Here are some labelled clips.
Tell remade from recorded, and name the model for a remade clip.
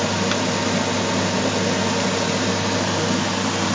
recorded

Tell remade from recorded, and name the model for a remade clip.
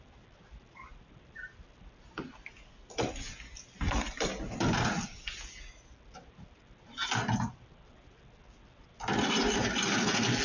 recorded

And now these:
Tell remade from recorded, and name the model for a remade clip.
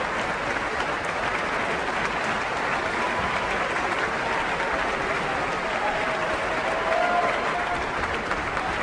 recorded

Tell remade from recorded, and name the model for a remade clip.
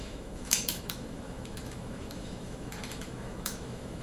remade, autoencoder, DAC-VAE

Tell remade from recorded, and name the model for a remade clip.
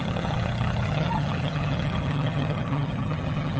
remade, vocoder, HiFi-GAN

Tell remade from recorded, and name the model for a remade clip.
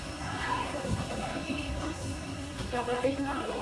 remade, codec, SNAC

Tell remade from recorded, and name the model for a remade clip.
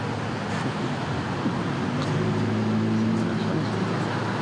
recorded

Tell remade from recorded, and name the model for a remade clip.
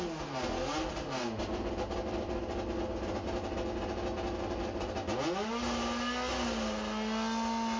recorded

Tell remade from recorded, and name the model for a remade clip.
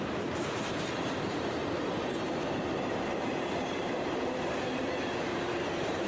remade, vocoder, BigVGAN v2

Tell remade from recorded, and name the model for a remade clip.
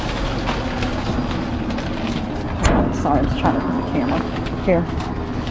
recorded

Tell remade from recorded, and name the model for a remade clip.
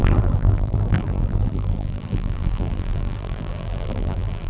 remade, vocoder, BigVGAN v2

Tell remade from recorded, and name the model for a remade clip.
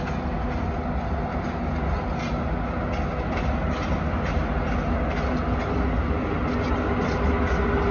recorded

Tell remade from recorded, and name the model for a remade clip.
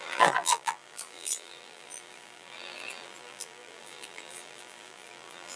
remade, vocoder, BigVGAN v2